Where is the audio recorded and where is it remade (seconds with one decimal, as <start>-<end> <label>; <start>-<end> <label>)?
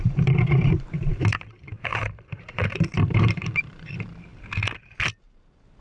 0.0-4.3 remade; 4.3-5.8 recorded